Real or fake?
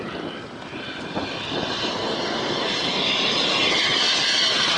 real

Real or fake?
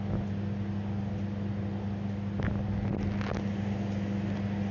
real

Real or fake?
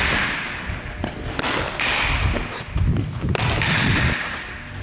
real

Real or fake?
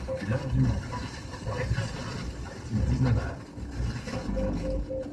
real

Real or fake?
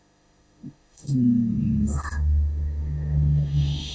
fake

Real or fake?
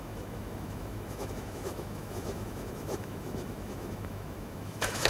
fake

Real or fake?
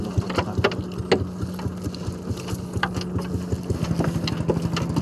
real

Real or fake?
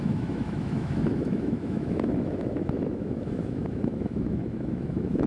fake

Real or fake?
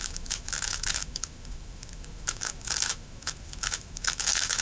fake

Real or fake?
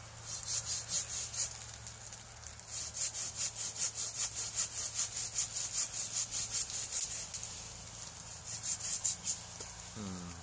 real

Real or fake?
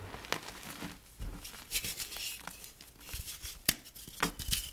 real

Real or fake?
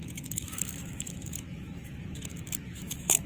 fake